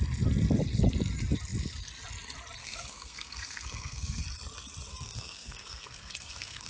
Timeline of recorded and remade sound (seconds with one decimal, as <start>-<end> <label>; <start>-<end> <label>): 0.0-2.6 recorded; 2.6-4.2 remade; 4.2-4.9 recorded; 4.9-6.7 remade